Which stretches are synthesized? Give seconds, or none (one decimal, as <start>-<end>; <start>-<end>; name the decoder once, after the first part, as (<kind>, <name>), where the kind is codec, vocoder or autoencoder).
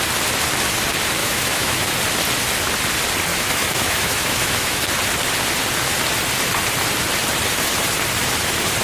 1.2-1.9 (autoencoder, DAC-VAE); 3.3-4.8